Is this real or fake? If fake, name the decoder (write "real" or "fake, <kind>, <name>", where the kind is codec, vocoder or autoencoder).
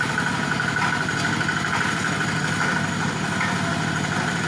real